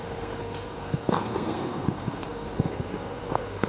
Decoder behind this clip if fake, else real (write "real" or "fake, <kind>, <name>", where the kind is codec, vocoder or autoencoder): fake, codec, SNAC